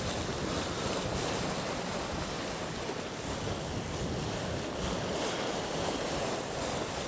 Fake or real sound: real